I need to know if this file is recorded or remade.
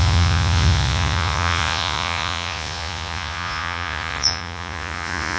remade